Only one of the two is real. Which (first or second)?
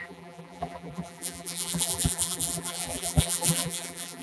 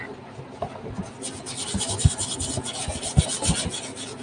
second